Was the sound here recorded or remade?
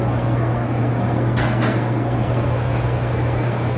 remade